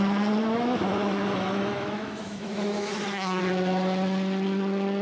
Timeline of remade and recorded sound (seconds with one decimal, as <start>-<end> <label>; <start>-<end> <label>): 0.0-0.4 recorded; 0.4-3.4 remade; 3.4-5.0 recorded

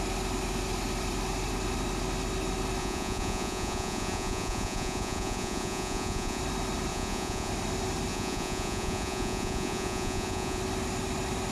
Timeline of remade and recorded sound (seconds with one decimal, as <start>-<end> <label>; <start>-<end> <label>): 0.0-2.8 recorded; 2.8-6.4 remade; 6.4-6.9 recorded; 6.9-7.5 remade; 7.5-8.1 recorded; 8.1-10.6 remade; 10.6-11.5 recorded

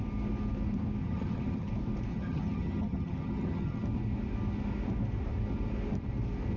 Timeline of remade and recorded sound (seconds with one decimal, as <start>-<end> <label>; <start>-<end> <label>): 0.0-1.0 recorded; 1.0-1.7 remade; 1.7-2.1 recorded; 2.1-3.8 remade; 3.8-6.6 recorded

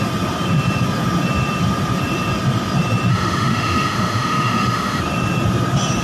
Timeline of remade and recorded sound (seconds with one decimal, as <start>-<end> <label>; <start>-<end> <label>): 0.0-3.1 recorded; 3.1-5.0 remade; 5.0-6.0 recorded

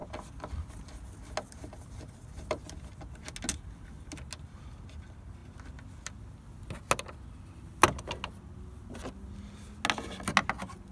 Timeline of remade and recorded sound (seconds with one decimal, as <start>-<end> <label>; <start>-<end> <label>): 0.0-10.9 recorded